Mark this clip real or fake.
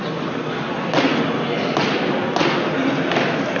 real